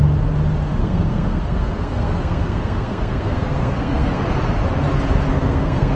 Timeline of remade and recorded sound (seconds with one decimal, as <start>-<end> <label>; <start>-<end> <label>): 0.0-0.8 recorded; 0.8-4.2 remade; 4.2-5.3 recorded; 5.3-6.0 remade